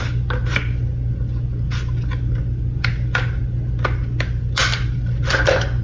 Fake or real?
real